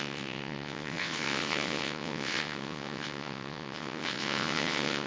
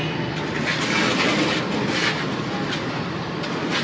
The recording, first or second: second